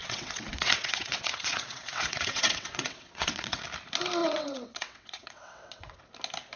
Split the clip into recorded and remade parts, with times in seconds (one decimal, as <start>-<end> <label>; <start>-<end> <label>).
0.0-3.6 remade; 3.6-4.2 recorded; 4.2-6.1 remade; 6.1-6.6 recorded